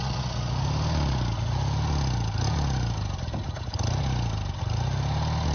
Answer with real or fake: real